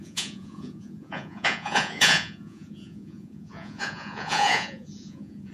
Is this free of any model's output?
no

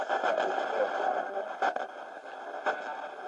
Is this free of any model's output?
yes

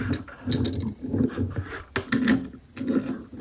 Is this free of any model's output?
yes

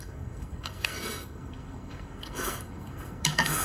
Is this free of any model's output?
no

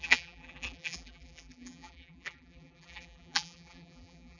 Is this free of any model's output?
no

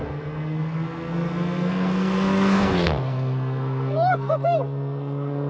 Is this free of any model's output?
no